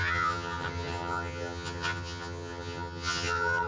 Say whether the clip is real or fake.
fake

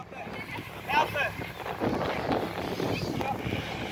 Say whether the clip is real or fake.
real